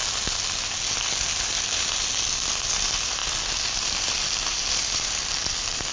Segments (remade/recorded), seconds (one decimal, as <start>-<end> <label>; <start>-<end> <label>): 0.0-1.8 recorded; 1.8-3.2 remade; 3.2-3.9 recorded; 3.9-5.9 remade